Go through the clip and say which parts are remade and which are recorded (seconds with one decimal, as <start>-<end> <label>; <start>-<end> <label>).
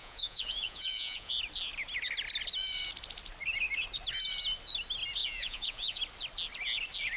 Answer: 0.0-1.3 remade; 1.3-5.2 recorded; 5.2-6.0 remade; 6.0-7.2 recorded